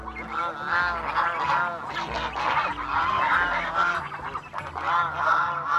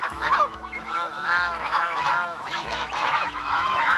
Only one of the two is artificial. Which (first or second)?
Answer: second